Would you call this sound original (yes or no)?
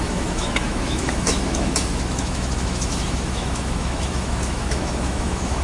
no